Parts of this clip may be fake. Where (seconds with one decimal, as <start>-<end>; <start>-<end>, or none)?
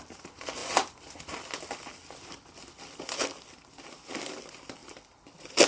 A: 4.8-5.7